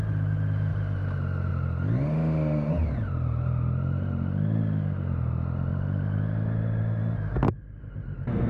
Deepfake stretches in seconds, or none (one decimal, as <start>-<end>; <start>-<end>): none